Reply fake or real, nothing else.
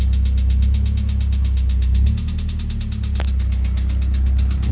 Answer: real